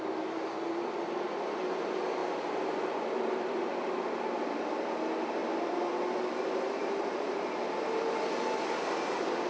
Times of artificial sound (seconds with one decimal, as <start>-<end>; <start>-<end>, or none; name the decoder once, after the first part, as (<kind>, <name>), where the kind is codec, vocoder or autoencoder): 0.0-2.2 (vocoder, BigVGAN v2); 2.9-5.4; 6.6-7.6

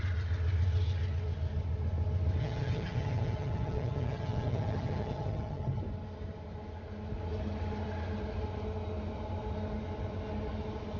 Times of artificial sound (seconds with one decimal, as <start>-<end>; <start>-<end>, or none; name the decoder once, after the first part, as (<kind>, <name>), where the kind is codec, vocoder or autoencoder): 2.4-5.8 (vocoder, HiFi-GAN)